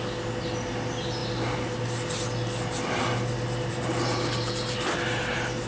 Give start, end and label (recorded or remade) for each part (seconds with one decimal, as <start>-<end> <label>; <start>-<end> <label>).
0.0-5.7 recorded